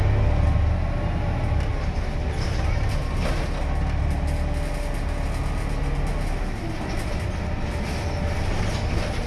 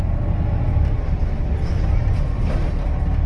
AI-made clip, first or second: second